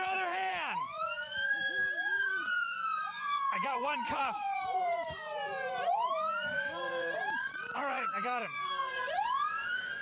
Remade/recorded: remade